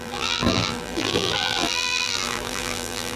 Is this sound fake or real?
fake